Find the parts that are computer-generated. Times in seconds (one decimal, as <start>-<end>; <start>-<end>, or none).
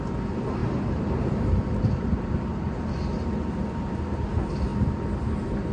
none